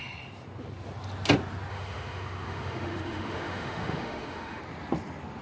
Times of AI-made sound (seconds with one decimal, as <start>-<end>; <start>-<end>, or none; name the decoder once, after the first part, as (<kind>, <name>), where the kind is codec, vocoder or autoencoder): 1.7-4.6 (autoencoder, DAC-VAE)